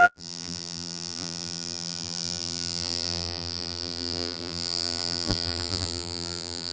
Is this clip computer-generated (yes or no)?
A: yes